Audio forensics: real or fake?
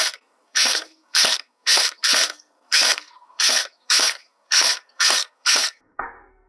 fake